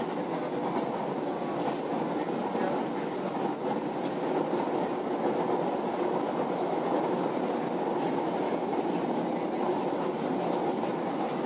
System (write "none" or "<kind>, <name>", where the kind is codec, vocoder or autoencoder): none